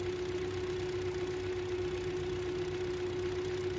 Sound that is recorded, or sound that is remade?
recorded